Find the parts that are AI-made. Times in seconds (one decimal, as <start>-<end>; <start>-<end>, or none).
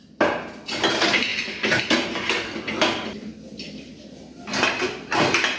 none